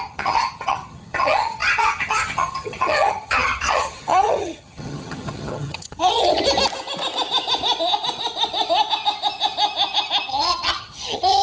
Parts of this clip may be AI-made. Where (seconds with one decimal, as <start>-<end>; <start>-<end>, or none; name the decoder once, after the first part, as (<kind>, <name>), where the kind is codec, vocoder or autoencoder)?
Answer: 0.0-6.3 (vocoder, HiFi-GAN); 10.3-11.4